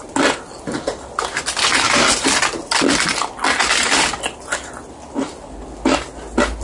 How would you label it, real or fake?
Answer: real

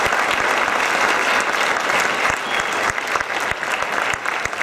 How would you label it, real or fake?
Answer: real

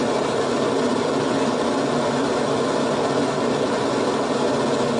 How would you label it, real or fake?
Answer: real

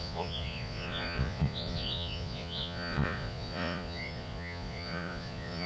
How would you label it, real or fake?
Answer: fake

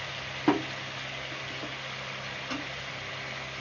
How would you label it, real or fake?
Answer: real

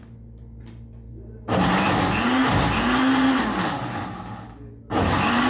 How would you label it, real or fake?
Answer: real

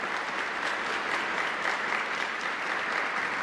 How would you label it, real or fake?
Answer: fake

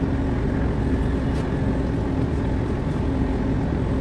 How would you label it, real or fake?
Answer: real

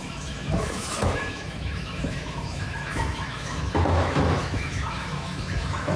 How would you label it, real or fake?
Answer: fake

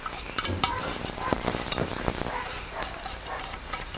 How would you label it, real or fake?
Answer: fake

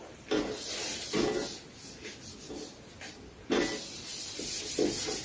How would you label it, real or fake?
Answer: real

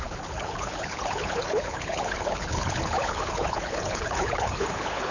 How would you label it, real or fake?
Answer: fake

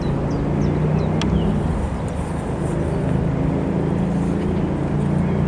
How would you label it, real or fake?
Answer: real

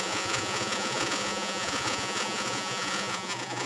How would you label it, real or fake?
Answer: fake